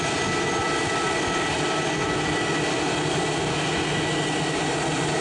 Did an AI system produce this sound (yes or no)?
no